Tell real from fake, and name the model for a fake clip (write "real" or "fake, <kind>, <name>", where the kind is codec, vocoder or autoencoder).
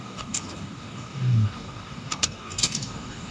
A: fake, codec, DAC